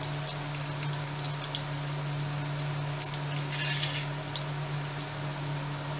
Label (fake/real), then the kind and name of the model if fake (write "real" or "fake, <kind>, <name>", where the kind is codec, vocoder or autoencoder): real